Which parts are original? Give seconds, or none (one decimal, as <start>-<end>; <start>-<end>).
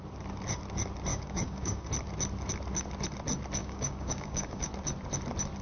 0.0-1.1; 1.9-3.6; 4.7-5.6